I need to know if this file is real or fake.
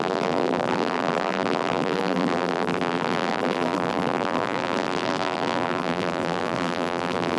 fake